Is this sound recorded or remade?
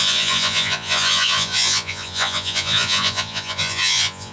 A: remade